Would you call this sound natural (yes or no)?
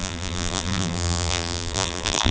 no